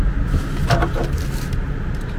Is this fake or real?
real